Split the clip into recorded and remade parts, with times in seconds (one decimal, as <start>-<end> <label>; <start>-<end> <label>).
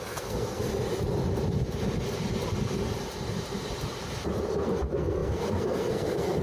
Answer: 0.0-0.7 remade; 0.7-4.5 recorded; 4.5-6.4 remade